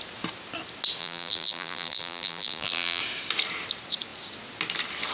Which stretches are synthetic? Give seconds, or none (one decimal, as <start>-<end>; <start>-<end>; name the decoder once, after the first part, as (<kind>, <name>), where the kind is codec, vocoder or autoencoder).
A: 1.0-3.0 (vocoder, BigVGAN v2)

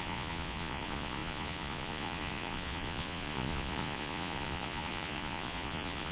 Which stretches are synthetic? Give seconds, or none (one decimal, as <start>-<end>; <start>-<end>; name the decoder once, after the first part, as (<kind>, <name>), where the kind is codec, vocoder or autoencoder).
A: 0.0-6.1 (vocoder, Vocos)